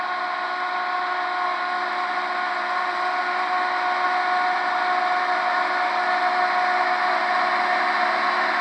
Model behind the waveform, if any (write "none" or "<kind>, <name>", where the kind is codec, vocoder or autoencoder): none